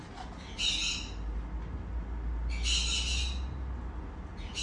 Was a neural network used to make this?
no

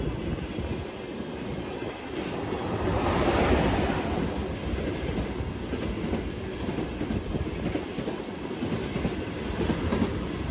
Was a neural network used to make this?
no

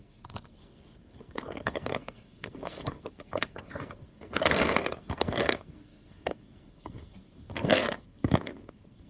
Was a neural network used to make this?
yes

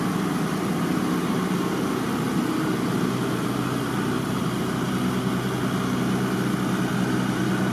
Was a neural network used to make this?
no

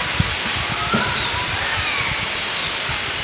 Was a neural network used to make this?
no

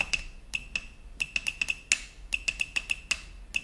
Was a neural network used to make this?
no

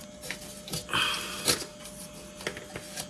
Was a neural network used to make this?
no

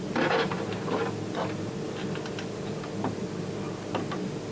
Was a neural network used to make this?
no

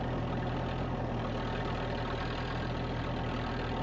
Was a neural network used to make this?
no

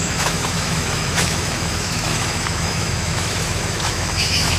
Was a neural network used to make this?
yes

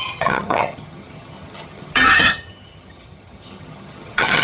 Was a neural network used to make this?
yes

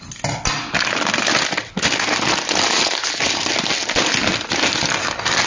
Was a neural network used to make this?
no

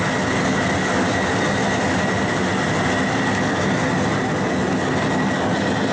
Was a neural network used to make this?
no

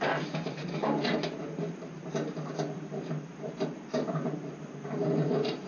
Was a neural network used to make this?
yes